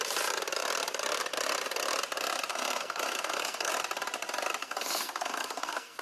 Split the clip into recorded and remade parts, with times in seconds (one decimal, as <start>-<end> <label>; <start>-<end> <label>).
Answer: 0.0-2.5 recorded; 2.5-3.7 remade; 3.7-4.6 recorded; 4.6-6.0 remade